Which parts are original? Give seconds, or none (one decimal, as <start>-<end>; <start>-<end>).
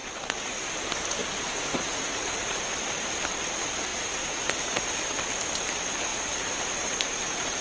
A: 0.7-1.2; 2.7-3.9; 4.9-6.1